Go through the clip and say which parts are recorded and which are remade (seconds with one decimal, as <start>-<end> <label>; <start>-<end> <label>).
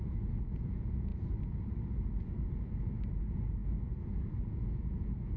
0.0-1.1 remade; 1.1-3.2 recorded; 3.2-3.6 remade; 3.6-4.4 recorded; 4.4-5.4 remade